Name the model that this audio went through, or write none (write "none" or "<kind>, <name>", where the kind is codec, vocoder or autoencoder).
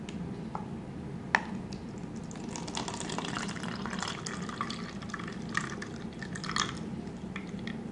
none